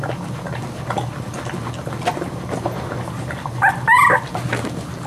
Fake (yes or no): no